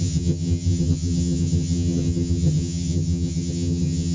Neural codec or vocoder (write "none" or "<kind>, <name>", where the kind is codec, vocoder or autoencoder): vocoder, HiFi-GAN